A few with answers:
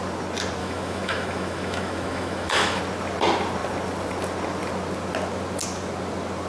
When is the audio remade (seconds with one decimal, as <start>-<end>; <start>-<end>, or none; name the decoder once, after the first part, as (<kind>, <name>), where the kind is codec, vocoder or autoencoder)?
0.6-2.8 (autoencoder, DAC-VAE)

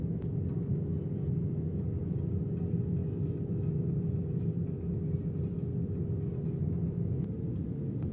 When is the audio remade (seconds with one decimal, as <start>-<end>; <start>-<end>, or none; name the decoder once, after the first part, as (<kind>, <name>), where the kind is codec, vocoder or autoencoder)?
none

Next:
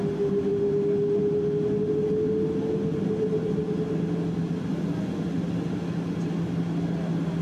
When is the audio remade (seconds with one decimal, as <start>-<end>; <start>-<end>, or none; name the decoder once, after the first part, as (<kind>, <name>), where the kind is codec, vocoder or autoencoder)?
none

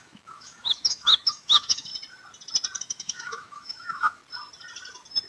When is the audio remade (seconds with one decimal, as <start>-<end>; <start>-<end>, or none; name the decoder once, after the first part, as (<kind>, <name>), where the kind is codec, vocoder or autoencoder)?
0.0-1.9 (autoencoder, DAC-VAE); 2.8-4.2